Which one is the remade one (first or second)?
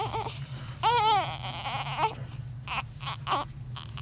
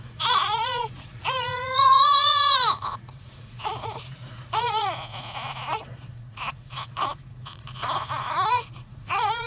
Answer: second